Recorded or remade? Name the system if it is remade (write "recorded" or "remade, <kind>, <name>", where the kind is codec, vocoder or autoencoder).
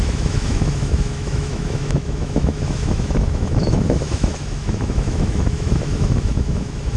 remade, autoencoder, DAC-VAE